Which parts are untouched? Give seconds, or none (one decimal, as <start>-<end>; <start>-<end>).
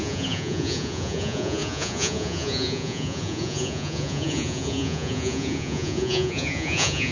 none